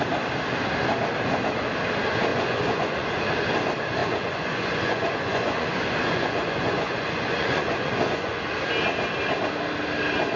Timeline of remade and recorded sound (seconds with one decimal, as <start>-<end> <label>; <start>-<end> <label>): 0.0-2.3 recorded; 2.3-3.2 remade; 3.2-4.0 recorded; 4.0-8.5 remade; 8.5-10.4 recorded